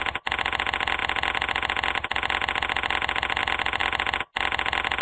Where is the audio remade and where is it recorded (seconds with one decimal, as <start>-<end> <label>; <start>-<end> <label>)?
0.0-5.0 recorded